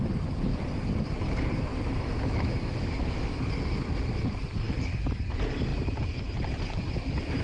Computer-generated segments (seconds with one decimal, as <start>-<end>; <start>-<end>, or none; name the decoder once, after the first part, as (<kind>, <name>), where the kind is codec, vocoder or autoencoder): 1.7-3.4 (autoencoder, DAC-VAE)